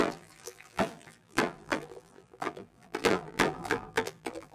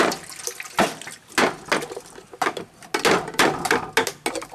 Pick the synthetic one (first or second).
first